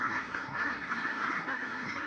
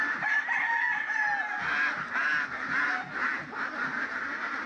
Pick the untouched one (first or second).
second